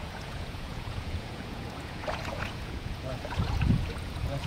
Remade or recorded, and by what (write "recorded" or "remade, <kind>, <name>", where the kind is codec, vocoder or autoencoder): remade, vocoder, Vocos